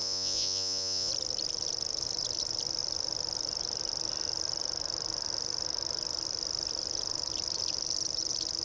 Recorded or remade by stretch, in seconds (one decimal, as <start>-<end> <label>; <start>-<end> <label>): 0.0-1.1 remade; 1.1-8.6 recorded